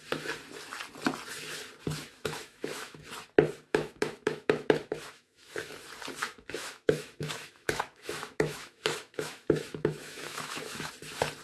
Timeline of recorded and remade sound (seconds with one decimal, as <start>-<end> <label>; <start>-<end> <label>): 0.0-2.0 recorded; 2.0-3.0 remade; 3.0-3.7 recorded; 3.7-5.7 remade; 5.7-6.2 recorded; 6.2-10.9 remade; 10.9-11.4 recorded

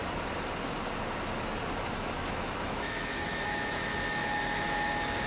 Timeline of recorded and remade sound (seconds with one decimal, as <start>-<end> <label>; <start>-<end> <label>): 0.0-1.8 recorded; 1.8-5.3 remade